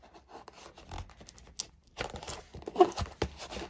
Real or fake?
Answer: real